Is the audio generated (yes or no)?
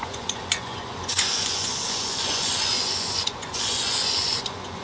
yes